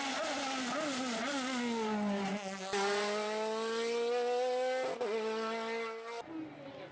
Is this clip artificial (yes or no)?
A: no